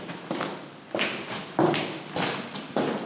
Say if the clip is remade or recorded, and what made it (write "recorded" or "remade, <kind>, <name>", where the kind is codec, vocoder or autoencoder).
recorded